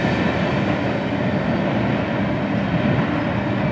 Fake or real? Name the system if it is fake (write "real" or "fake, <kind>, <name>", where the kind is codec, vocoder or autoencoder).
real